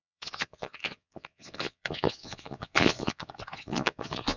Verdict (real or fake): fake